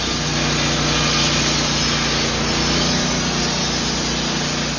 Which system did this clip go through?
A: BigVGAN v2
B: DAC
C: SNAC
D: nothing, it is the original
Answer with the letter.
D